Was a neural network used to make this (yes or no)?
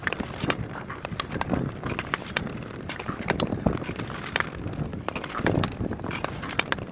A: no